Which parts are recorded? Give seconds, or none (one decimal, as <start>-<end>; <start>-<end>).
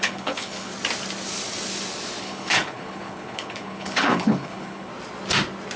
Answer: 0.7-2.2; 4.9-5.8